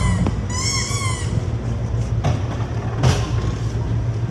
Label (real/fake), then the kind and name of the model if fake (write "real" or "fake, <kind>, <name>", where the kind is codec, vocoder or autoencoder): real